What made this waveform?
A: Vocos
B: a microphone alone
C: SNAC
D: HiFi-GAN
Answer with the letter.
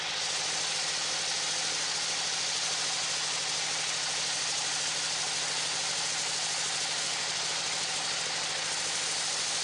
B